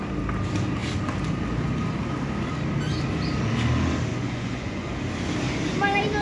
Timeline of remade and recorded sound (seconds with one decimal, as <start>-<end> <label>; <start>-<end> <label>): 0.0-4.1 recorded; 4.1-5.0 remade; 5.0-6.2 recorded